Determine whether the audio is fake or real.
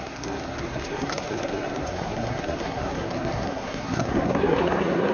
fake